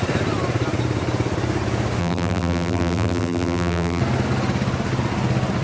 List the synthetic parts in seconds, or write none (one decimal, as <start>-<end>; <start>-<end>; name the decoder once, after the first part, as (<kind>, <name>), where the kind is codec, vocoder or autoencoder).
2.0-4.0 (vocoder, BigVGAN v2)